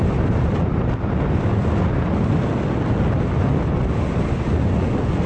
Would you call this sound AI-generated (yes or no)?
no